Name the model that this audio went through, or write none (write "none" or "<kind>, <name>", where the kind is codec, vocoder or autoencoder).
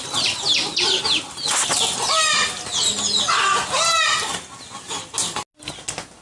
none